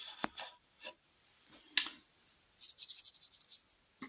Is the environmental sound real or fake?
real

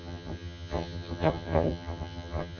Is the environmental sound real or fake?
fake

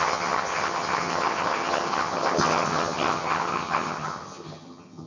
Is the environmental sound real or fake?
fake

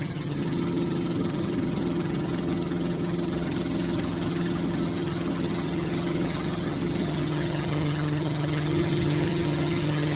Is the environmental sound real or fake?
fake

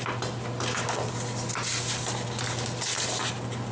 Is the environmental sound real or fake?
real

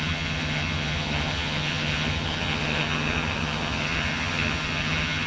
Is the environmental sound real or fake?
fake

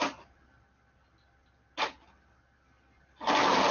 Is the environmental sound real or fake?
real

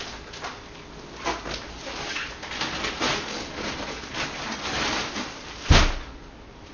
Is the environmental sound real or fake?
real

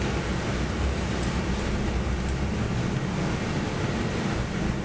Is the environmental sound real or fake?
real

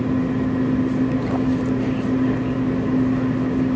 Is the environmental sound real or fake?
real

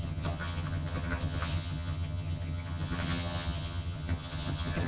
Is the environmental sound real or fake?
fake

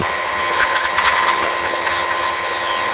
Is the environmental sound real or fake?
fake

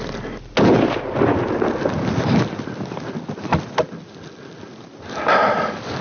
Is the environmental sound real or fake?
real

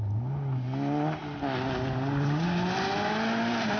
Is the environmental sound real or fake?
real